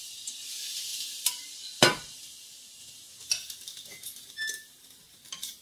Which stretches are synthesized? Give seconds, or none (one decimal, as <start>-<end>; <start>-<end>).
none